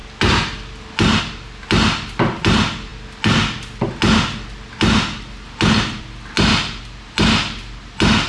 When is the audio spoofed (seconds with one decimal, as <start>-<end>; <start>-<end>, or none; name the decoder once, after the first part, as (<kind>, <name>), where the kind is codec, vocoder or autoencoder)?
none